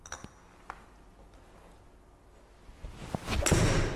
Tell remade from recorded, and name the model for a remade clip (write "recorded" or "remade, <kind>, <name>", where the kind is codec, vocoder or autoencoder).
recorded